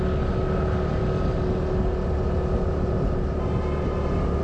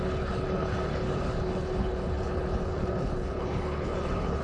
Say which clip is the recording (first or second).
first